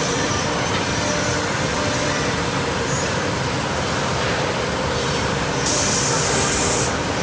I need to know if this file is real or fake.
real